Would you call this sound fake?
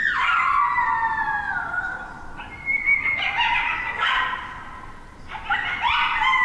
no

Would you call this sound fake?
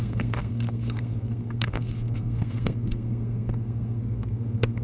yes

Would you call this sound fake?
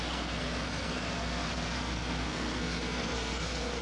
yes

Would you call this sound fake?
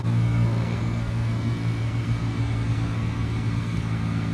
yes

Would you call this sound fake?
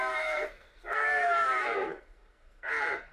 yes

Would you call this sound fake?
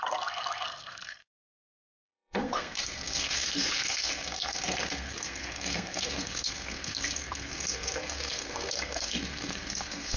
yes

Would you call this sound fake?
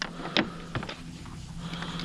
no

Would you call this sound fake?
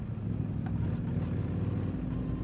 no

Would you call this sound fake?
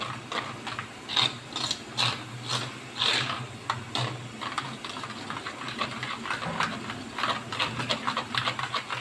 no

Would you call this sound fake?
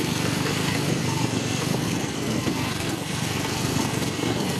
yes